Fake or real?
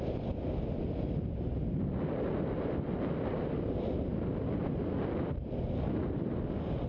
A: real